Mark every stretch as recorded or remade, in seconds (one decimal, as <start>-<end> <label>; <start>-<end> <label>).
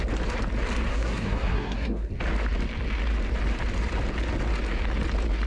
0.0-0.9 recorded; 0.9-2.1 remade; 2.1-5.5 recorded